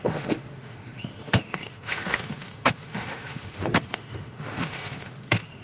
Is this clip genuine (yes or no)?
no